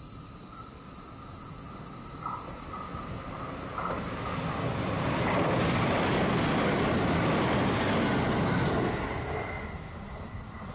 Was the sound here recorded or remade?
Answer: recorded